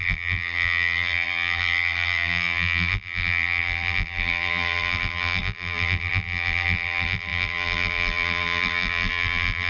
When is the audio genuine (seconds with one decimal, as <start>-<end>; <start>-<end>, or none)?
none